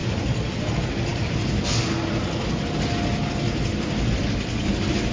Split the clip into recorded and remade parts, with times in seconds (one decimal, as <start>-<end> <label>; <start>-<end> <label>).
0.0-5.1 recorded